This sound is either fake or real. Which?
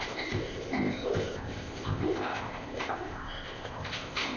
fake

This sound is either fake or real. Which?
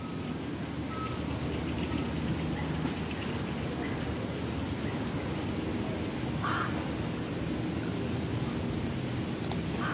real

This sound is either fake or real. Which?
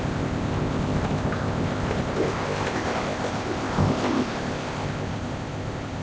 fake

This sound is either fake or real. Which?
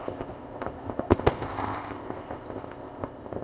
fake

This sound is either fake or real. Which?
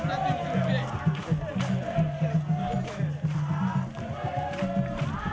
real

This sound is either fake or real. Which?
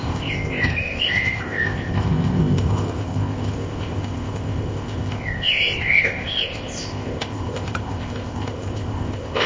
fake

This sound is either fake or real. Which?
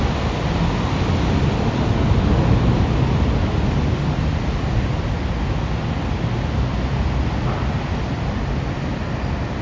real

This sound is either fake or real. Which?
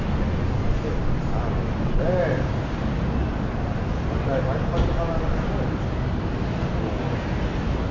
real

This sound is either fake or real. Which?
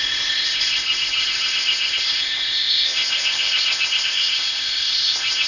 fake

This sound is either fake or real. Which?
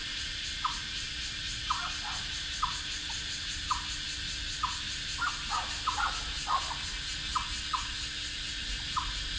real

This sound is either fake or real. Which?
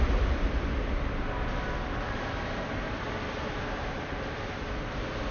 real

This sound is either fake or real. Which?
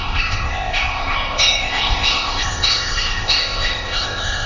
fake